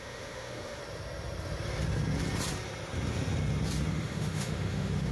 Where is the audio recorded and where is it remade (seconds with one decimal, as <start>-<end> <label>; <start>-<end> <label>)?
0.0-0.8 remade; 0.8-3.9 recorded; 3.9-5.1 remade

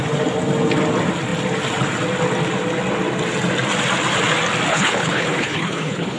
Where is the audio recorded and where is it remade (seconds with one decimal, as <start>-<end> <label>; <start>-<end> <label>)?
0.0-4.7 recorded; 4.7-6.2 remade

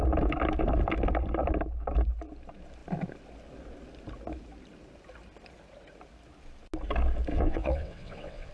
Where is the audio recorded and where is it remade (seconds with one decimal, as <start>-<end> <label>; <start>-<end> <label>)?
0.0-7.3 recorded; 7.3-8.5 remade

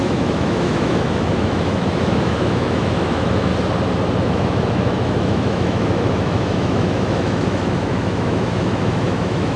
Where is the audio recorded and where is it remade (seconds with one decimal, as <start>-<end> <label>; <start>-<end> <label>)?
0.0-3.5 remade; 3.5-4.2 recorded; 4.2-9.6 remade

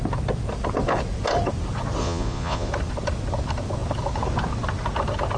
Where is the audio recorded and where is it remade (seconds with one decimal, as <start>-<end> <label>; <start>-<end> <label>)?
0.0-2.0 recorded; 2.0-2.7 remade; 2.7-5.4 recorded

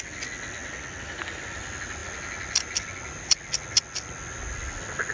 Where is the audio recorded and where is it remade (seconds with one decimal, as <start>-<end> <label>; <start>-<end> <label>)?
0.0-5.1 recorded

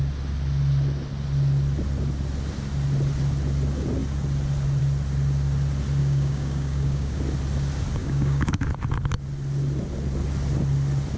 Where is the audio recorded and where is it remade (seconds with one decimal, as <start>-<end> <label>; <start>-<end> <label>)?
0.0-6.0 recorded; 6.0-7.2 remade; 7.2-8.0 recorded; 8.0-8.7 remade; 8.7-11.2 recorded

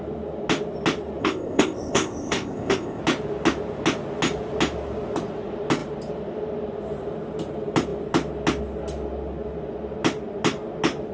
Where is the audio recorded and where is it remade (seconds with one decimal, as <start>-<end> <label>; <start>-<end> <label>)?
0.0-1.2 recorded; 1.2-3.0 remade; 3.0-11.1 recorded